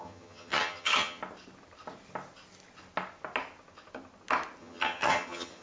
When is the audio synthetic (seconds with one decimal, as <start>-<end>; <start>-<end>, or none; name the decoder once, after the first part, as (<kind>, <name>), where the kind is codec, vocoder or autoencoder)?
0.0-1.2 (vocoder, HiFi-GAN); 4.6-5.6